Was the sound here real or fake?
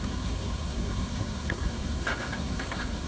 fake